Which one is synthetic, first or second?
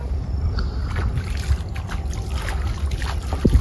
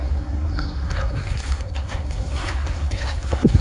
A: second